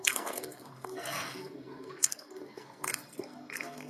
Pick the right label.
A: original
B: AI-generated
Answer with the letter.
B